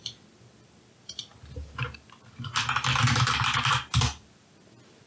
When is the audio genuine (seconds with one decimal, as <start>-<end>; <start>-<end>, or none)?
none